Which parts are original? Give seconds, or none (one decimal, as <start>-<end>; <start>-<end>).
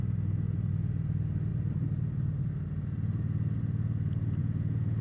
0.0-4.4